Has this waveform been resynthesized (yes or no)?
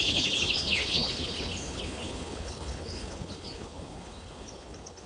yes